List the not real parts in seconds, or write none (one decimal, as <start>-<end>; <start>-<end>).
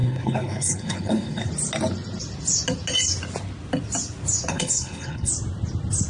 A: 0.0-1.5; 4.5-5.3